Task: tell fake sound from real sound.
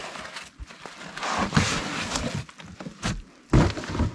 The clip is real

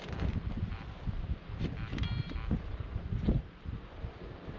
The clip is real